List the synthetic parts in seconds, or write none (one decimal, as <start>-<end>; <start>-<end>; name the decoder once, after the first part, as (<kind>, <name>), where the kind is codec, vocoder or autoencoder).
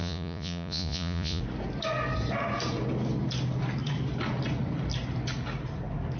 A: 0.0-1.4 (vocoder, Vocos)